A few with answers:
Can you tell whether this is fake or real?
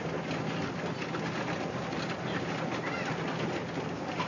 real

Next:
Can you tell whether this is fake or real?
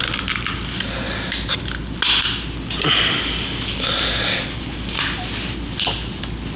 real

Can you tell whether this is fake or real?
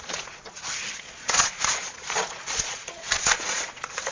fake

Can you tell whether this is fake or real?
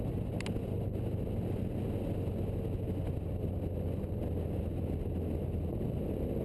real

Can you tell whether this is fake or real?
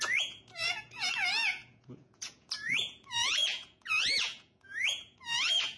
fake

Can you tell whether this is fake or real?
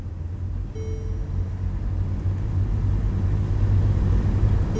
real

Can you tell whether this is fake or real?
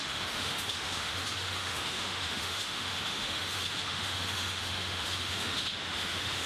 fake